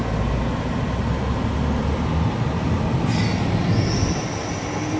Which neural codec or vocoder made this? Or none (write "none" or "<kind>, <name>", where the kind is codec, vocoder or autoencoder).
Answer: none